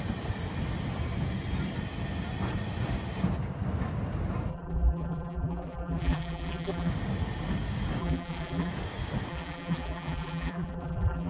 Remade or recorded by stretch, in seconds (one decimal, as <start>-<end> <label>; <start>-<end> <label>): 0.0-4.5 recorded; 4.5-6.9 remade; 6.9-8.0 recorded; 8.0-8.7 remade; 8.7-9.3 recorded; 9.3-11.3 remade